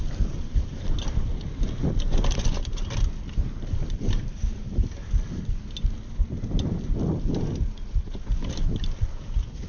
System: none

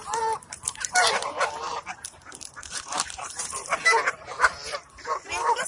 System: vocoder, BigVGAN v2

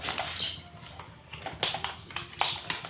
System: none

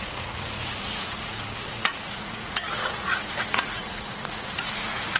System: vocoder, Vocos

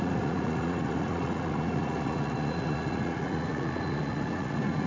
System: vocoder, Vocos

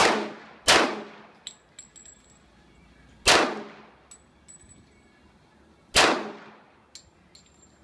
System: none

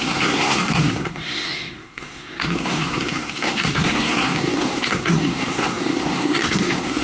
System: codec, SNAC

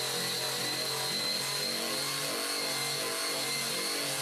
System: none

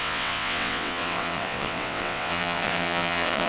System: vocoder, WaveNeXt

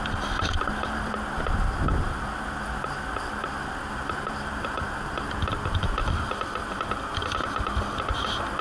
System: vocoder, BigVGAN v2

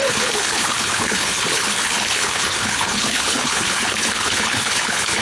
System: codec, HILCodec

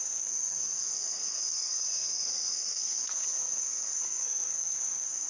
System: codec, SNAC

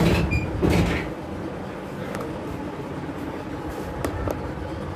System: none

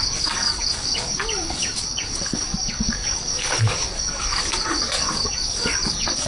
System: codec, DAC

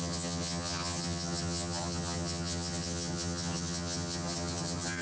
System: vocoder, HiFi-GAN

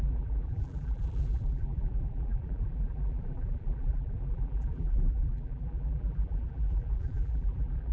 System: vocoder, BigVGAN v2